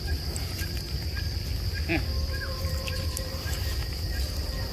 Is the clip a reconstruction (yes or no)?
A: no